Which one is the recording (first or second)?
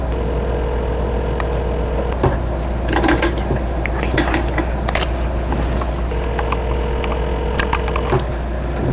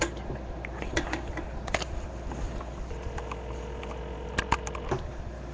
first